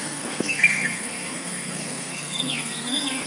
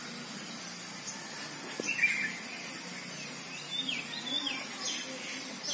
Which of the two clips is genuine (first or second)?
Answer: second